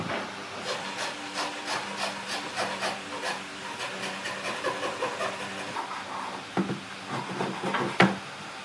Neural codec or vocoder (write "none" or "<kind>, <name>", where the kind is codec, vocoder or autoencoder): none